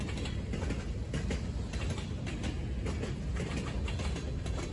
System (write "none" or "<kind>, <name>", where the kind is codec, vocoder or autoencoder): none